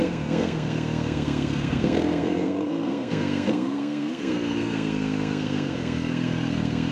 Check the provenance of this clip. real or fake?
fake